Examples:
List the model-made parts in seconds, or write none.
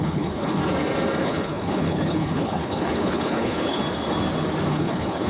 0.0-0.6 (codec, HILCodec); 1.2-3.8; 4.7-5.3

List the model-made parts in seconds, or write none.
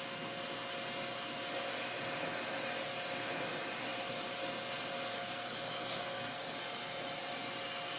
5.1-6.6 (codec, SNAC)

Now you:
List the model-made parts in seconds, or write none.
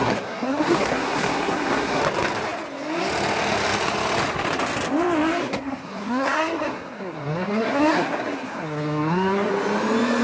0.0-2.0 (codec, SNAC); 5.4-9.5